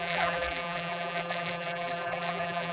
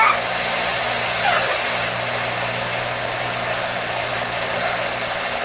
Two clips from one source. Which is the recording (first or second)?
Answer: second